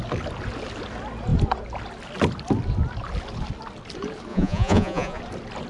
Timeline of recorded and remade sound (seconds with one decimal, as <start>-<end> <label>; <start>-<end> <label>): 0.0-4.3 recorded; 4.3-5.2 remade; 5.2-5.7 recorded